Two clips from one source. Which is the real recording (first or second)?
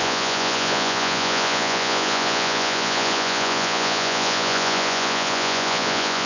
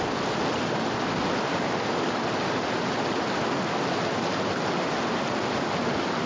second